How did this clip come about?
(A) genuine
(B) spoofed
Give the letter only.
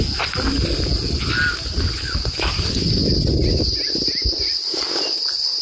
A